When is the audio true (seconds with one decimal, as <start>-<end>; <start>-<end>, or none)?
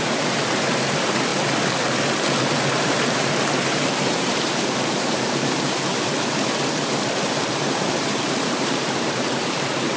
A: 1.3-2.7; 5.9-8.4